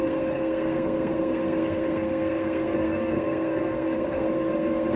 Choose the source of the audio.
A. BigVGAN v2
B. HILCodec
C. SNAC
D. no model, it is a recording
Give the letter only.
C